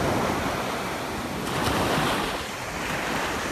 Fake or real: real